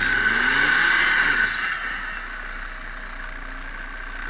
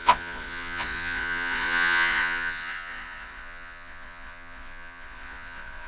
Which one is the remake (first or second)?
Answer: second